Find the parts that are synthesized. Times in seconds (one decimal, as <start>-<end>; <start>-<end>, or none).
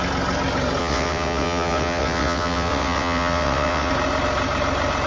0.8-3.9